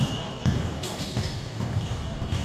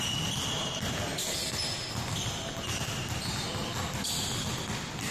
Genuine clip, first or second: second